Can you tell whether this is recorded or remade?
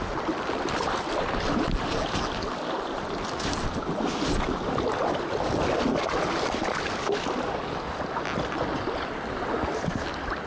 recorded